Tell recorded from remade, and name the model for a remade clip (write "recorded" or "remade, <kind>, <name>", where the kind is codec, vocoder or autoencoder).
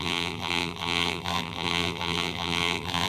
remade, vocoder, BigVGAN v2